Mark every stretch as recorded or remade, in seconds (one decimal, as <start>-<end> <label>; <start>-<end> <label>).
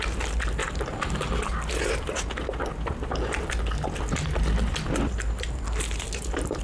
0.0-6.6 recorded